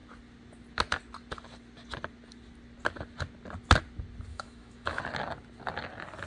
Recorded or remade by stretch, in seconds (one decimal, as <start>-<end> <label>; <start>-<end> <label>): 0.0-4.3 recorded; 4.3-5.0 remade; 5.0-6.3 recorded